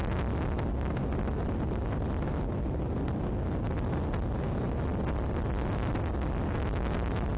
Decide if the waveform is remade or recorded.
recorded